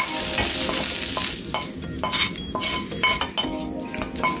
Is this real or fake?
real